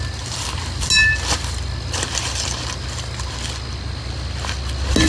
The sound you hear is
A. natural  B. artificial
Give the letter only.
A